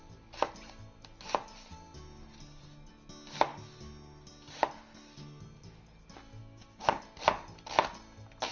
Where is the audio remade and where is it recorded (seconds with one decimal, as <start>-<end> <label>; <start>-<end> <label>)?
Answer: 0.0-6.4 recorded; 6.4-7.0 remade; 7.0-8.5 recorded